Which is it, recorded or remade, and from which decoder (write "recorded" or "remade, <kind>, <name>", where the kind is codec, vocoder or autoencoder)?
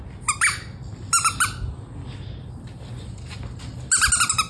recorded